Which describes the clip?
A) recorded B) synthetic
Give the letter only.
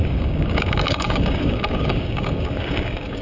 B